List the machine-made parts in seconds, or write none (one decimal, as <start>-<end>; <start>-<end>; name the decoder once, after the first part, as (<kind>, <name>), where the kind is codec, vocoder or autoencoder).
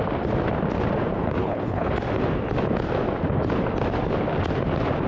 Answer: 1.4-1.9 (codec, HILCodec)